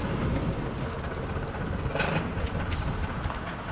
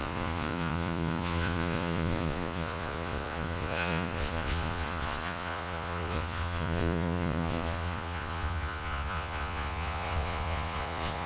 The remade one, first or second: second